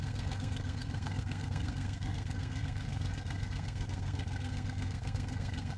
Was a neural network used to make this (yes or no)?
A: yes